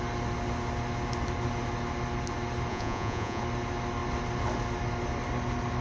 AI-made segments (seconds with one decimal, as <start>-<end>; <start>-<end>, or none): 2.7-3.4